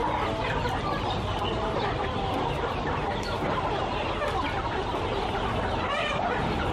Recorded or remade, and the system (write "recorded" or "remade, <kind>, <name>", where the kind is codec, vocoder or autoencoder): recorded